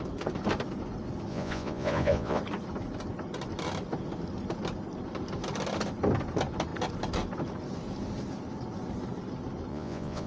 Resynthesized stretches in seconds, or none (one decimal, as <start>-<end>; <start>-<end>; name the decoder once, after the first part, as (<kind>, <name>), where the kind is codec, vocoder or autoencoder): 1.3-2.4 (vocoder, Vocos); 9.7-10.3